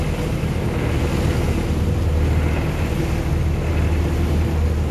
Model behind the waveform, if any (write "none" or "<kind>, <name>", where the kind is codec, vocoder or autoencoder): none